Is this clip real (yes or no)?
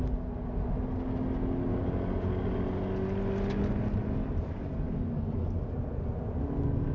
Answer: yes